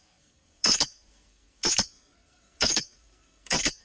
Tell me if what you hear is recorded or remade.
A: remade